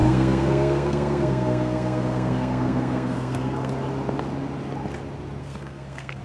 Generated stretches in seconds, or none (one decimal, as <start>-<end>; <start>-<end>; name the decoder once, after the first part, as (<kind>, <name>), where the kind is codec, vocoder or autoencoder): 0.0-3.7 (codec, SNAC); 5.4-6.2